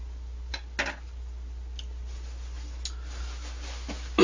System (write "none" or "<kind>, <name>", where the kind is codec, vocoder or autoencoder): none